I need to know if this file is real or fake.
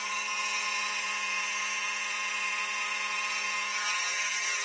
fake